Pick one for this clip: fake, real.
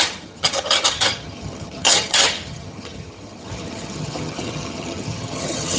fake